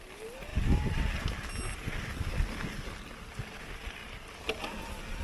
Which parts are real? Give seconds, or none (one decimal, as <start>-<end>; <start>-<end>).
0.0-5.2